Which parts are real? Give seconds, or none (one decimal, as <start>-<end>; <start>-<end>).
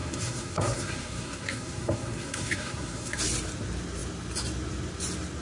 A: 3.2-5.4